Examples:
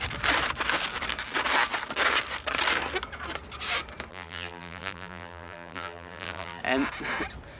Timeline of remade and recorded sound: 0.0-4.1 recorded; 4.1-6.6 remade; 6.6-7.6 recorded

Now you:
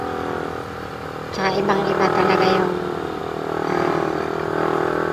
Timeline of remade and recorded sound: 0.0-5.1 recorded

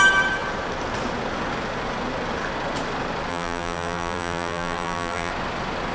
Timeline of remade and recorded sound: 0.0-3.3 recorded; 3.3-5.3 remade; 5.3-5.9 recorded